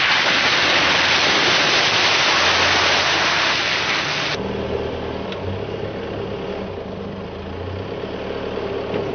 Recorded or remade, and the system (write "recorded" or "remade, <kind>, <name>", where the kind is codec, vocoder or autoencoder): recorded